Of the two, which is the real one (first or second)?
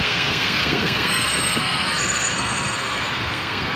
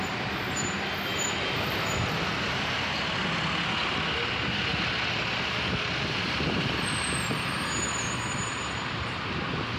second